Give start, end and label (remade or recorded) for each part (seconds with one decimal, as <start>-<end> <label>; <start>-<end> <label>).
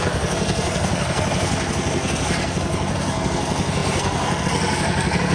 0.0-5.3 remade